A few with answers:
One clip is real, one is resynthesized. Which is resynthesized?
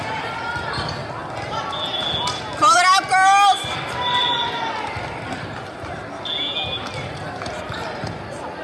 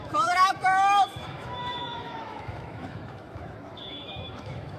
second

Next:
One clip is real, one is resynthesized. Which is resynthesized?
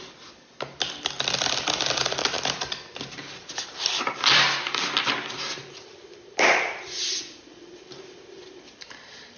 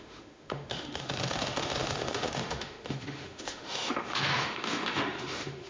second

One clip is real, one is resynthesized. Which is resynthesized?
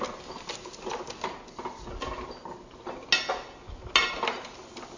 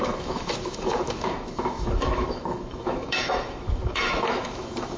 second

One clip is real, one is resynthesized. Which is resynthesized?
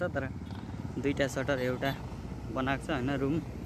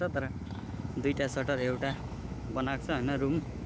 second